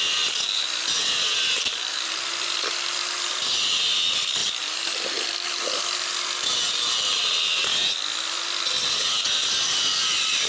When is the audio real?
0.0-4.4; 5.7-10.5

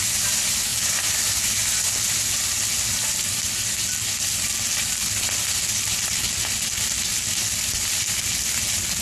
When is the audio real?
0.0-9.0

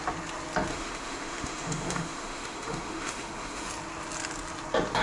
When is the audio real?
0.0-0.7; 3.7-5.0

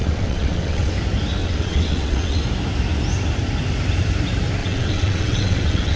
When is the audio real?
0.9-1.4; 2.4-4.6

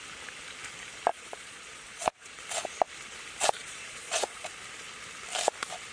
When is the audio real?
0.0-1.1; 2.4-3.6; 4.5-5.9